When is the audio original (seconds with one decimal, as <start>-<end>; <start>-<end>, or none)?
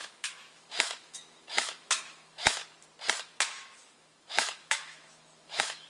2.6-3.2